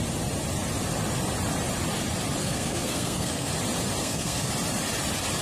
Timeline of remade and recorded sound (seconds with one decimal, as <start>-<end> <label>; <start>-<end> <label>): 0.0-2.4 recorded; 2.4-3.5 remade; 3.5-4.0 recorded; 4.0-4.5 remade; 4.5-5.4 recorded